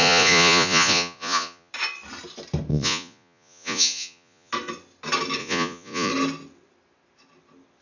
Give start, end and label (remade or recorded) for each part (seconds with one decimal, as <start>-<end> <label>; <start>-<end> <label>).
0.0-1.7 remade; 1.7-2.7 recorded; 2.7-4.5 remade; 4.5-5.4 recorded; 5.4-6.1 remade; 6.1-7.8 recorded